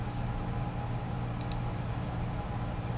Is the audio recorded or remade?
recorded